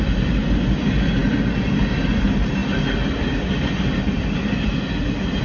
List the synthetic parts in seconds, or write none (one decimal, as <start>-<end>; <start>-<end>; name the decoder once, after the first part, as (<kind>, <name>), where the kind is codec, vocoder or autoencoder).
none